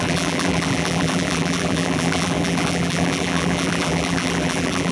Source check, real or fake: fake